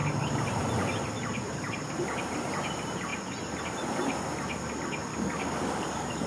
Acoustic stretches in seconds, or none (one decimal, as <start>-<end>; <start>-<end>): 0.5-5.1